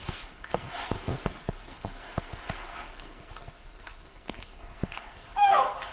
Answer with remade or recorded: remade